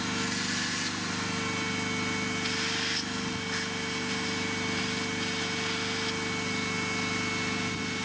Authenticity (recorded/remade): recorded